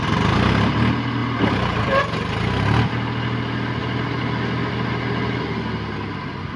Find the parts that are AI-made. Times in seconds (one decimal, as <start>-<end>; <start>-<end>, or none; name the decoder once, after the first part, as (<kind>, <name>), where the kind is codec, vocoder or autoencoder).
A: none